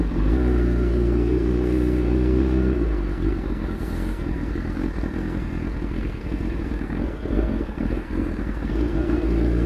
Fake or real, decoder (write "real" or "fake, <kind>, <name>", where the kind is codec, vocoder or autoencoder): fake, codec, SNAC